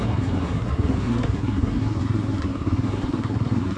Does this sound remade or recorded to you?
remade